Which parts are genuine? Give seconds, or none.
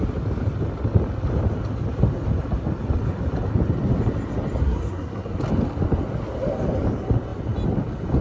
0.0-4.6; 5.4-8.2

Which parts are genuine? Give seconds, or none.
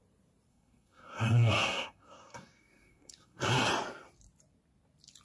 0.0-0.5; 3.6-5.2